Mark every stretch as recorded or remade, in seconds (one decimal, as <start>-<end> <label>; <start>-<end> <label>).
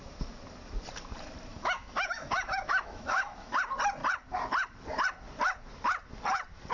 0.0-1.5 recorded; 1.5-3.6 remade; 3.6-6.7 recorded